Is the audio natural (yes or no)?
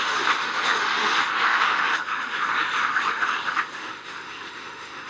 no